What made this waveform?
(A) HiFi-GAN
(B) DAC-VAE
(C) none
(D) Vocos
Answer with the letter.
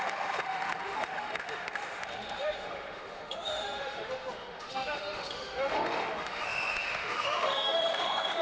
B